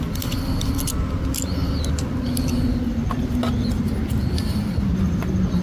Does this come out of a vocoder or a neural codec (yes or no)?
no